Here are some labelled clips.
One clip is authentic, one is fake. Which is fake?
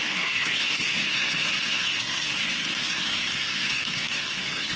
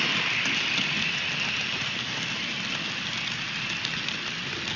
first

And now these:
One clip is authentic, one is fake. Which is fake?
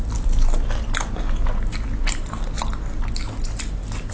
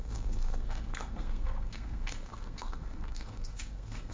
second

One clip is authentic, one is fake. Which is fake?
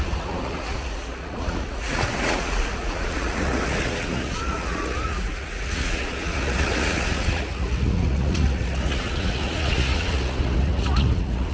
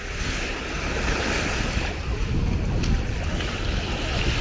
first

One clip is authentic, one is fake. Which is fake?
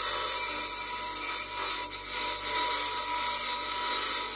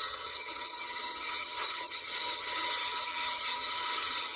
second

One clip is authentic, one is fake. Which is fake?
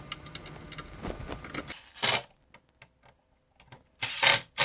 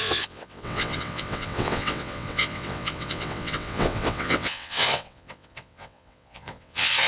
second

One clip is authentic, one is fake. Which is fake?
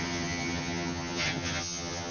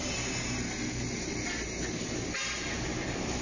first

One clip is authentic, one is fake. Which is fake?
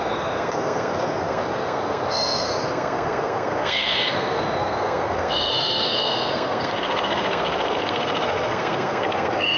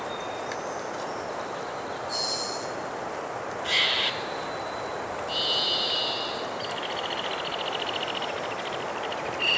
first